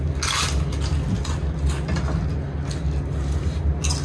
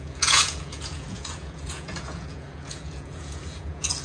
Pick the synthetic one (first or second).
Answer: second